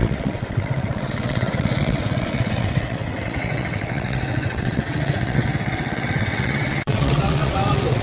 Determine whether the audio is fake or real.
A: fake